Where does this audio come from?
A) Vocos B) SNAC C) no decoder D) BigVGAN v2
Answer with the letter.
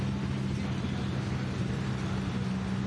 C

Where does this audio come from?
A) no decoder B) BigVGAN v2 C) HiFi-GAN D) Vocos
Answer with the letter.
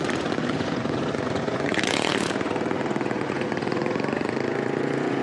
D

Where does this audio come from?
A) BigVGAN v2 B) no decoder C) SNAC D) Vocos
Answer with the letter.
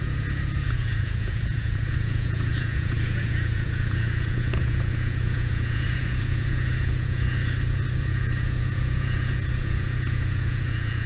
D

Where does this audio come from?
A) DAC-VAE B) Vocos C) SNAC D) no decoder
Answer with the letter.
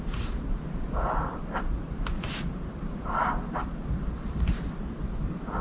D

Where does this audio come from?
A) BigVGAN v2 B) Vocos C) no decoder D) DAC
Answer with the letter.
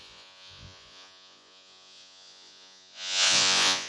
B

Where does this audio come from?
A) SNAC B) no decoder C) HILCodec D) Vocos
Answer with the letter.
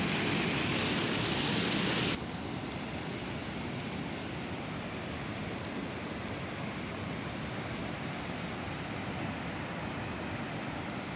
B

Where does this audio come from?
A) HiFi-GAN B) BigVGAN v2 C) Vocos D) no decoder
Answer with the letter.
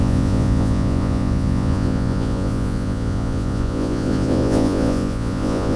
C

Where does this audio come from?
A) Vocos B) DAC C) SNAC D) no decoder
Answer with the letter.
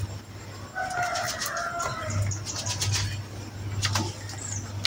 D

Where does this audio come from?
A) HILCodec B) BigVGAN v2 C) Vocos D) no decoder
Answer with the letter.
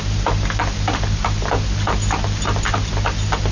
D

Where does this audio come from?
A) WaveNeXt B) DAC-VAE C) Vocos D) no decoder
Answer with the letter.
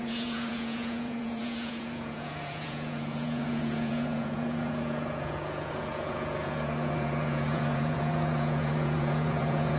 C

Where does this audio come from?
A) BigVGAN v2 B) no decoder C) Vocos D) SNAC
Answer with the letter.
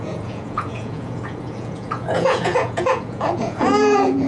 C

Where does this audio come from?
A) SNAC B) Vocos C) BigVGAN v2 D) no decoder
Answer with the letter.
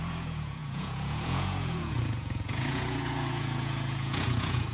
B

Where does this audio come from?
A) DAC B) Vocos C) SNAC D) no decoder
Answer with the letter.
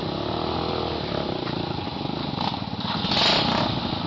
D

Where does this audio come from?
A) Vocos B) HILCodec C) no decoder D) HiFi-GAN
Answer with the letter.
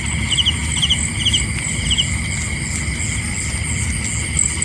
C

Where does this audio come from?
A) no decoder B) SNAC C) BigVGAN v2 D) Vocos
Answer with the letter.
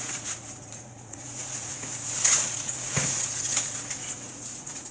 D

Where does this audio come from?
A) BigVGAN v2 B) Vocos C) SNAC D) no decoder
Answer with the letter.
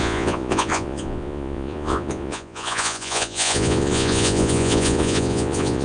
B